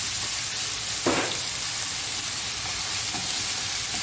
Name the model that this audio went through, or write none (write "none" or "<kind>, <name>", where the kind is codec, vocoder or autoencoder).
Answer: none